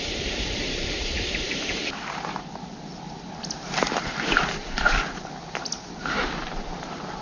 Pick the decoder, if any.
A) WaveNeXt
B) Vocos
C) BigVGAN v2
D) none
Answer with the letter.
C